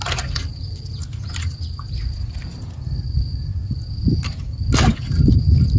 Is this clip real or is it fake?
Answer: real